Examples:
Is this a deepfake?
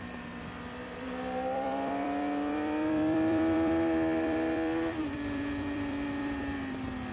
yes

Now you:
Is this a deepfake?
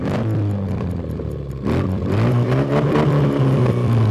yes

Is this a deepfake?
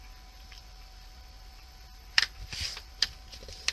yes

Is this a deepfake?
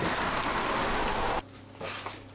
no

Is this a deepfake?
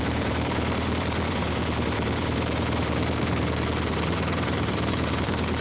yes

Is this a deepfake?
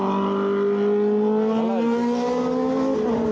no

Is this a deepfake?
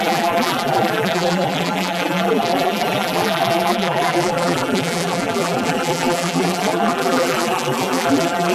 yes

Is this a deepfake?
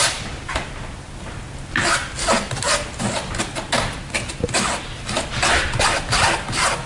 no